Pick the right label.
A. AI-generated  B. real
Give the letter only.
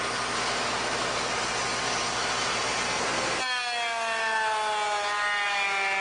B